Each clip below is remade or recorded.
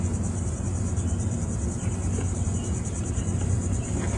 recorded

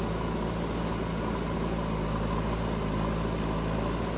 recorded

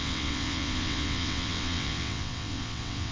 remade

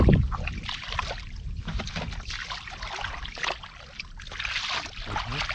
recorded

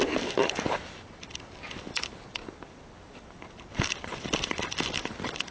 remade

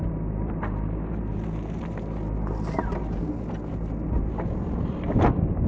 recorded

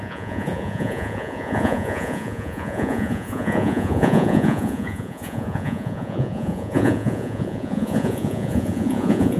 remade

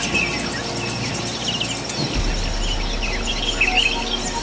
recorded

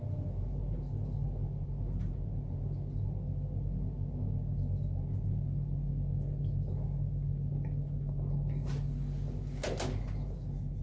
recorded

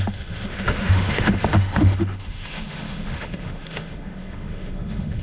remade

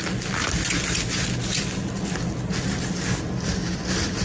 recorded